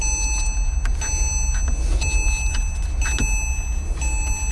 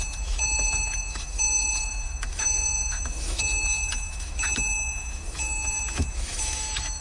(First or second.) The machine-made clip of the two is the second